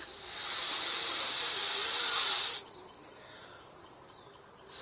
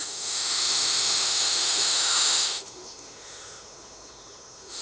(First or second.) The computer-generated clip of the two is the second